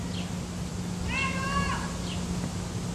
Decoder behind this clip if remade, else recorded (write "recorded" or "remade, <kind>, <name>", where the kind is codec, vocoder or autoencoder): recorded